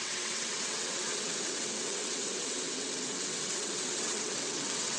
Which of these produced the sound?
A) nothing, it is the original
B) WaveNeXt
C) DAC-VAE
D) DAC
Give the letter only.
B